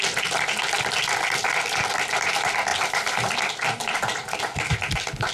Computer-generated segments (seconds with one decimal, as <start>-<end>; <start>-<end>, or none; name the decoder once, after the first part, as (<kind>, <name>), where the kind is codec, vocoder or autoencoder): none